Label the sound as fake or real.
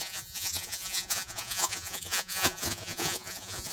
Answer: fake